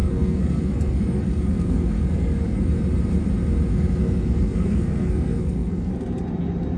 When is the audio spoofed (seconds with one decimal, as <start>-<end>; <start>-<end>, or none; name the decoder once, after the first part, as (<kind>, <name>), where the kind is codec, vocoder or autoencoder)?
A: 0.0-2.7 (codec, SNAC); 3.7-5.9